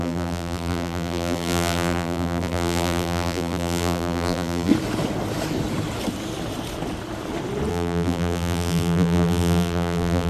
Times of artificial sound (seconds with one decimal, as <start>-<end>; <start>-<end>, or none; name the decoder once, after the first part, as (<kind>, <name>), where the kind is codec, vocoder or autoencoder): 0.0-4.7 (vocoder, BigVGAN v2); 7.7-10.3